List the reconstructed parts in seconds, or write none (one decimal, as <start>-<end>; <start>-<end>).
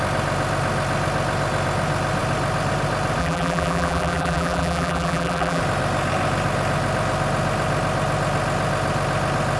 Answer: 3.2-5.6